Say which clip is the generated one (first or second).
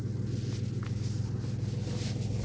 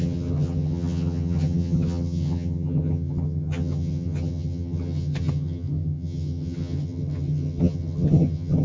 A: second